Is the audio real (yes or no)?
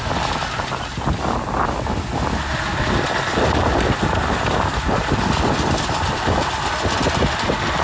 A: yes